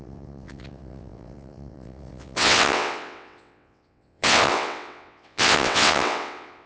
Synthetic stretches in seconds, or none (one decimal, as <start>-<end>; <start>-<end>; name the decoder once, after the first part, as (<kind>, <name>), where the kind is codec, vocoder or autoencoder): 0.0-6.7 (vocoder, WaveNeXt)